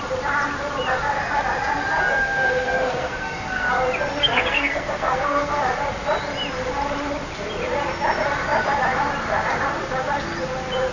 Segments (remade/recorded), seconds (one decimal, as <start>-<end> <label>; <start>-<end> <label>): 0.0-2.1 recorded; 2.1-3.7 remade; 3.7-4.2 recorded; 4.2-5.6 remade; 5.6-10.9 recorded